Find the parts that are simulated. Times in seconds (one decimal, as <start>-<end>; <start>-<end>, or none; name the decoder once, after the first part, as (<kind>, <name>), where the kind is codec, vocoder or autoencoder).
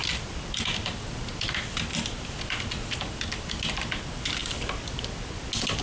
none